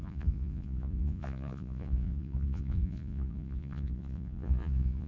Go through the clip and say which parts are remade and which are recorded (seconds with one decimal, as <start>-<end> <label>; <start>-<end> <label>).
0.0-5.1 remade